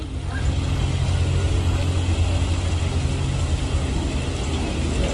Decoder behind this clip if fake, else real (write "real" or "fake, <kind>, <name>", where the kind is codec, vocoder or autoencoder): real